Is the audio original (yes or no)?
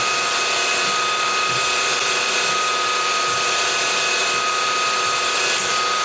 yes